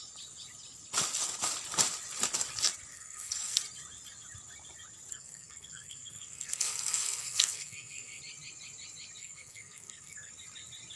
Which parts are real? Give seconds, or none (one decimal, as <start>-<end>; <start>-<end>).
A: 0.0-2.9; 3.6-5.1; 8.2-9.2; 10.3-11.0